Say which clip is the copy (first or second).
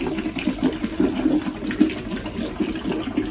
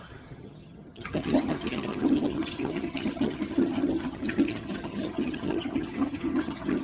second